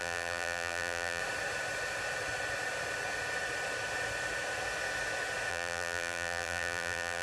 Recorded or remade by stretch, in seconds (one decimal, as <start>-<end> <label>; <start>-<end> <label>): 0.0-1.2 remade; 1.2-5.5 recorded; 5.5-7.2 remade